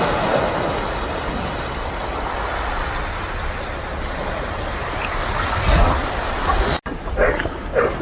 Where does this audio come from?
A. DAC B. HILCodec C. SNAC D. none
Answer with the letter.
D